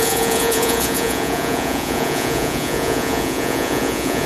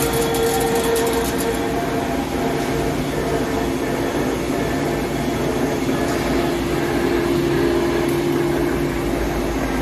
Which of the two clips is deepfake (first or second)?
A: first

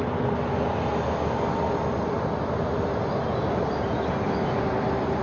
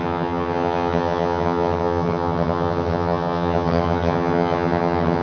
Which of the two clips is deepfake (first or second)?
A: second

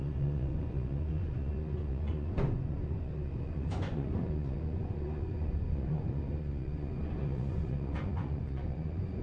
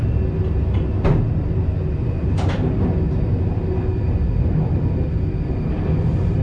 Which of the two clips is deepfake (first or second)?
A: first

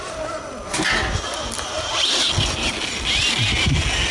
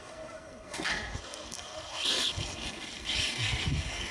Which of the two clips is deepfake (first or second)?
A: second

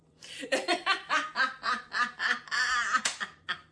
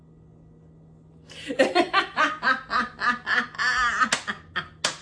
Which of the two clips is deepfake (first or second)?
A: first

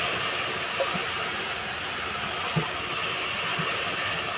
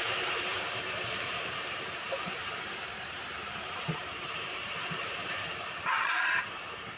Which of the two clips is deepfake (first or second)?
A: second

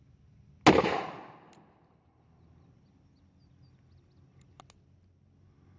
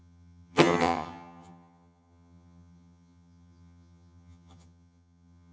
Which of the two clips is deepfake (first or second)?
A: second